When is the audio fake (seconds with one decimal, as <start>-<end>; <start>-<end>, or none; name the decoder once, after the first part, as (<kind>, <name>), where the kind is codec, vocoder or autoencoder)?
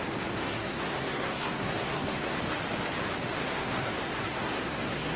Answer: 0.4-2.4 (codec, SNAC); 3.4-5.2